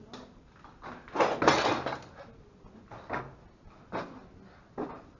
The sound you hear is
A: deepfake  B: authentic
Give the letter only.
B